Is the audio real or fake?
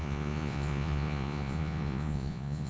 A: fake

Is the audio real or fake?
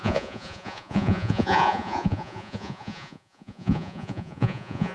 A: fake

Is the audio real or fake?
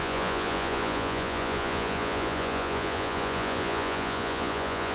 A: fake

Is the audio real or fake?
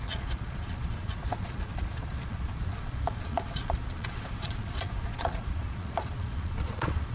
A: fake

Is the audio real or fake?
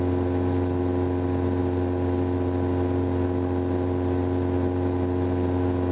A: real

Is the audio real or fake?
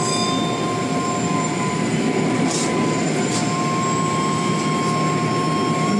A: real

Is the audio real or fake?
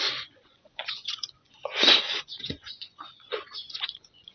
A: fake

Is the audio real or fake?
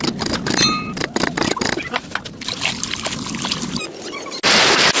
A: real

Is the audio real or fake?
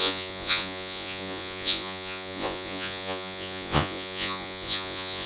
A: fake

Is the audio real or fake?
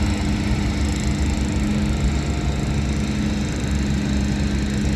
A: real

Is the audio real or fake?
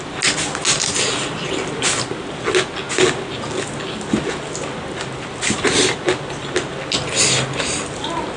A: real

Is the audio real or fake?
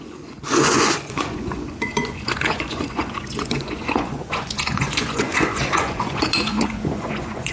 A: fake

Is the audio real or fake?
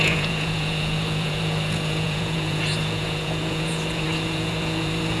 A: fake